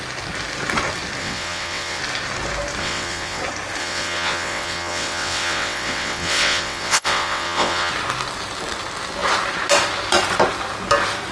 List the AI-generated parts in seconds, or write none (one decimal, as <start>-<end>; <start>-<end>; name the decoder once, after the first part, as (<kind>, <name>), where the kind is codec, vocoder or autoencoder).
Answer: 1.2-2.0 (vocoder, WaveNeXt); 2.8-3.4; 3.8-7.9